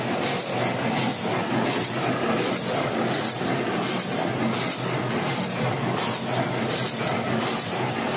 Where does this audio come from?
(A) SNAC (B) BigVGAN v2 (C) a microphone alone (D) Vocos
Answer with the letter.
C